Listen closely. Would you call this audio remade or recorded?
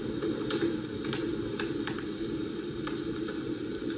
recorded